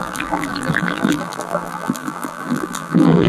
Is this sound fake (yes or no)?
yes